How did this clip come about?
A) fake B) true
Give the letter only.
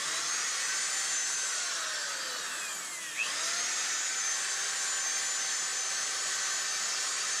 B